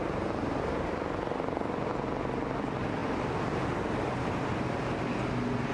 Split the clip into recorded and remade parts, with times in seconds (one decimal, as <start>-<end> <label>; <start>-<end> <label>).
0.0-5.7 recorded